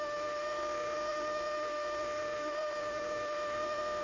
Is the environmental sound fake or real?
fake